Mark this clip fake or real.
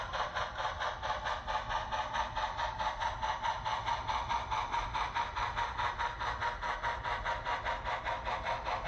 real